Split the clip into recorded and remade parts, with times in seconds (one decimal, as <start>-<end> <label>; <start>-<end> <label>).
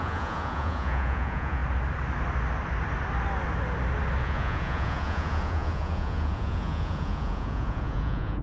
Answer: 0.0-1.6 remade; 1.6-4.2 recorded; 4.2-8.4 remade